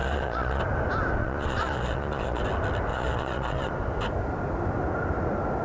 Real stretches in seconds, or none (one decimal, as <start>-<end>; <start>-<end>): 0.6-1.2; 2.4-2.9; 3.7-5.6